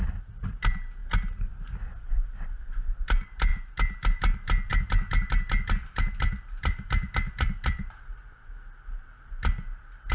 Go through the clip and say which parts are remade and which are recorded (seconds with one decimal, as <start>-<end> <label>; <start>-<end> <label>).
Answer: 0.0-10.1 recorded